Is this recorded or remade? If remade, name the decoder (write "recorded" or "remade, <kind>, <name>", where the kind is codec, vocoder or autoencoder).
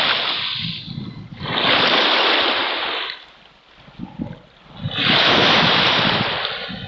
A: recorded